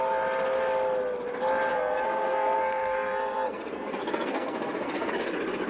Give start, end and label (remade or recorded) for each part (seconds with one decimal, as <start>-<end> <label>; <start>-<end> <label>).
0.0-1.7 recorded; 1.7-5.1 remade; 5.1-5.7 recorded